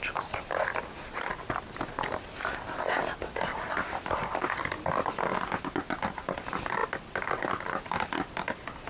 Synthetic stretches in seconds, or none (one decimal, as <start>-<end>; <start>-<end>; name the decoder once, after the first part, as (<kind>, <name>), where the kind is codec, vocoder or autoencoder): none